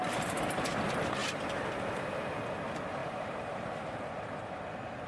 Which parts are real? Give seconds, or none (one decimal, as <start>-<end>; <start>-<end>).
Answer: 0.0-3.0; 4.1-5.1